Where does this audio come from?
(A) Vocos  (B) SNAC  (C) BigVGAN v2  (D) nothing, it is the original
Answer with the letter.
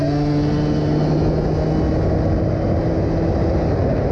D